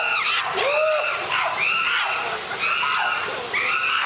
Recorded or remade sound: recorded